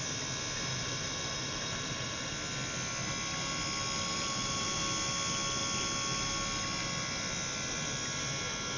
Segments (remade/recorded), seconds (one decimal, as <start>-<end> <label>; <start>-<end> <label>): 0.0-0.7 recorded; 0.7-2.3 remade; 2.3-4.1 recorded; 4.1-4.8 remade; 4.8-8.8 recorded